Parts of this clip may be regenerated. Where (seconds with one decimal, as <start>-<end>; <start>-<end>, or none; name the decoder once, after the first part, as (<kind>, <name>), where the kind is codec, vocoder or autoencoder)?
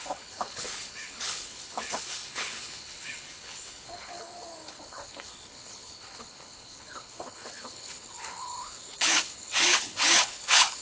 0.0-10.8 (codec, HILCodec)